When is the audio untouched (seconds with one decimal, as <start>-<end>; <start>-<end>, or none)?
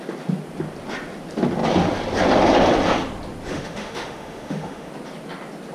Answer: 0.0-3.5; 4.9-5.7